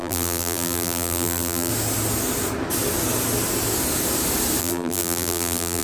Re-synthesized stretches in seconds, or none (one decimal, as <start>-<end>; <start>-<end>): 0.0-1.7; 4.6-5.8